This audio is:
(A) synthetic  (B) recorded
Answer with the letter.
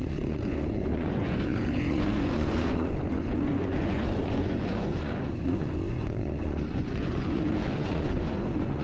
A